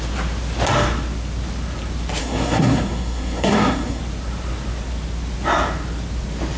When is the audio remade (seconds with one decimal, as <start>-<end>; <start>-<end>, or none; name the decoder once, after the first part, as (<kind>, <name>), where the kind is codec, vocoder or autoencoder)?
2.2-4.0 (codec, SNAC)